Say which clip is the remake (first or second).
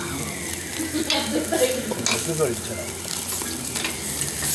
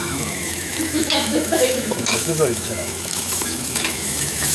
second